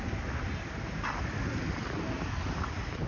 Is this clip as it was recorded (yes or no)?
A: yes